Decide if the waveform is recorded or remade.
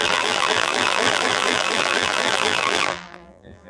remade